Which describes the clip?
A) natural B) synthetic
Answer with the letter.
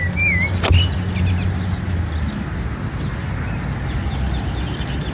A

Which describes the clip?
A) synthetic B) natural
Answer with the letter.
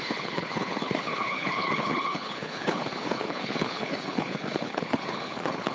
A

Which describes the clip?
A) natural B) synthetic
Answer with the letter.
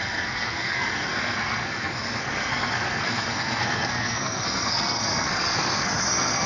B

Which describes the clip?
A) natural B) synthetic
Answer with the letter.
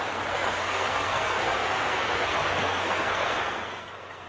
B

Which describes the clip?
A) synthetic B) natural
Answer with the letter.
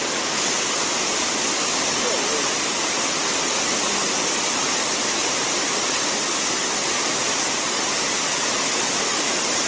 B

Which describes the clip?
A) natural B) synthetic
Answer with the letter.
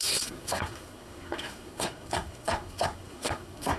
B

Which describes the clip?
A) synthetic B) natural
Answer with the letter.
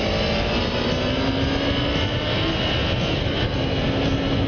B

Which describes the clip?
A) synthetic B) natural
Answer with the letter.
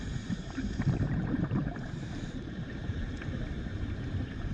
A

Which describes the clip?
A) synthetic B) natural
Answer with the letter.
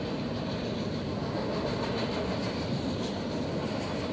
B